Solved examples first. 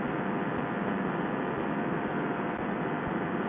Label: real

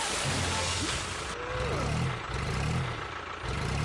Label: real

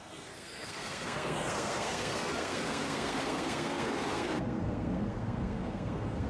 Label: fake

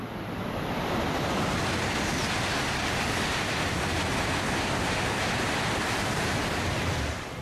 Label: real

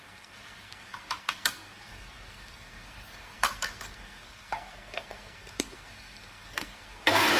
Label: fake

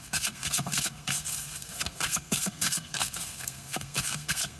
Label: fake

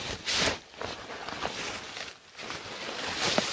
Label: real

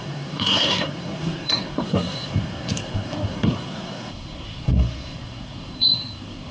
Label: fake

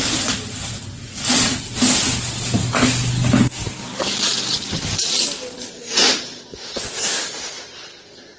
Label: real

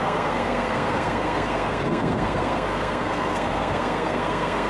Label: fake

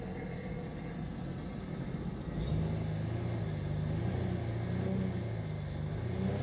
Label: real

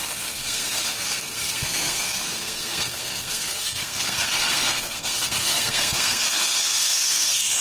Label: fake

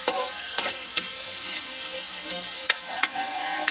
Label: fake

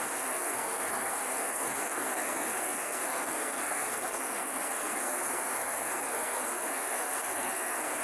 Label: fake